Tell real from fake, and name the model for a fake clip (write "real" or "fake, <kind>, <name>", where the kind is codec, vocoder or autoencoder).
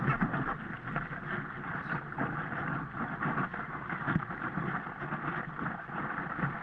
real